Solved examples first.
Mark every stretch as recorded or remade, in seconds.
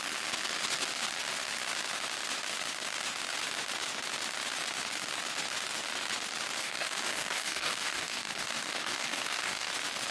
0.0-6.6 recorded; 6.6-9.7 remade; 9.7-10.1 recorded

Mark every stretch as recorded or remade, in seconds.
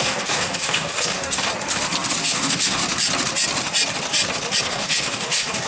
0.0-1.5 remade; 1.5-2.2 recorded; 2.2-2.8 remade; 2.8-4.6 recorded; 4.6-5.7 remade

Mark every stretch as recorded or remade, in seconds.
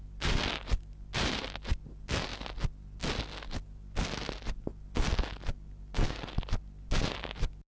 0.0-7.7 recorded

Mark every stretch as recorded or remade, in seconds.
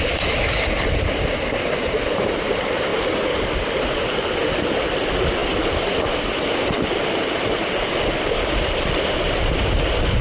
0.0-10.2 recorded